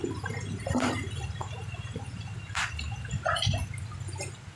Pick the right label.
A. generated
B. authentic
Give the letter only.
B